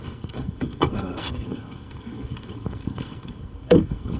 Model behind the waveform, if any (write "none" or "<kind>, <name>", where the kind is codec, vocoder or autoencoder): codec, SNAC